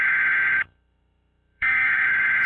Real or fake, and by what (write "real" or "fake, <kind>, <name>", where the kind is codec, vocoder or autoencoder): fake, autoencoder, DAC-VAE